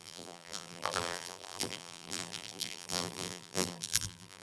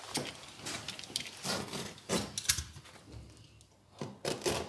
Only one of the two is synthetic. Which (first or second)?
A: first